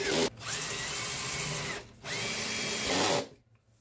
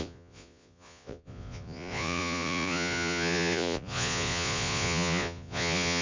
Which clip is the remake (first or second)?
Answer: second